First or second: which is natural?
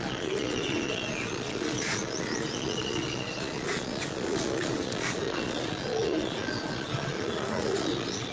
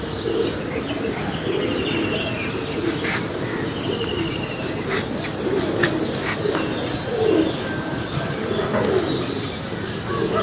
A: second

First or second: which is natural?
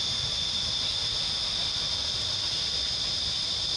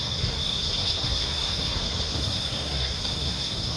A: first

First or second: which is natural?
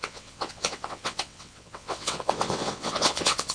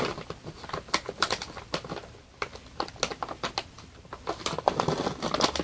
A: second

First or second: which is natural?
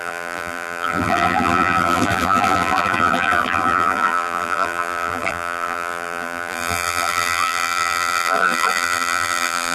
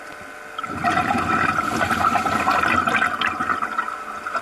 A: second